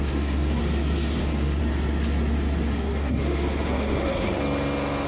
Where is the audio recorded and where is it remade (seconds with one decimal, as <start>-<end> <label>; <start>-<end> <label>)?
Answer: 0.0-0.6 remade; 0.6-1.2 recorded; 1.2-1.6 remade; 1.6-2.7 recorded; 2.7-4.4 remade; 4.4-5.1 recorded